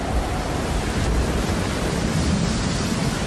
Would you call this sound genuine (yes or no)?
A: no